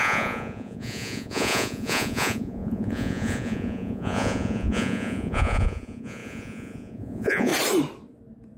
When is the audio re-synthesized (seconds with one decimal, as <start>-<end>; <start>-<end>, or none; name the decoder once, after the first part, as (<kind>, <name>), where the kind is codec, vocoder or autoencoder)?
0.0-7.5 (vocoder, Vocos)